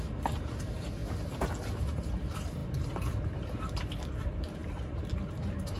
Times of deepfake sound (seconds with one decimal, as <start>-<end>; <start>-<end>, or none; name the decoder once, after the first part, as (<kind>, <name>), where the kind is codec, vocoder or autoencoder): 0.0-1.0 (vocoder, BigVGAN v2); 1.7-5.8